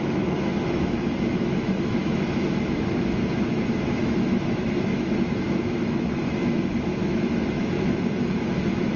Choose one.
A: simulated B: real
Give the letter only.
A